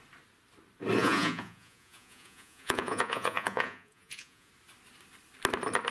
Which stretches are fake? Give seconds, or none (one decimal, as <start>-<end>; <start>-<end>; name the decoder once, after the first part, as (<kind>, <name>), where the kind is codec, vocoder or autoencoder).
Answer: 1.0-4.5 (vocoder, Vocos)